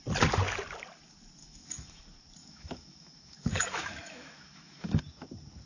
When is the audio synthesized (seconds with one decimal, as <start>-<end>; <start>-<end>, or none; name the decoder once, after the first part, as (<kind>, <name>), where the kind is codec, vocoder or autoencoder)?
1.4-2.0 (autoencoder, DAC-VAE); 2.4-5.0